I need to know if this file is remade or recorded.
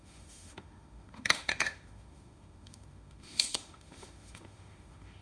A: remade